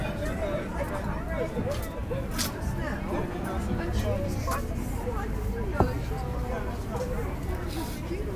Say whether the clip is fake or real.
real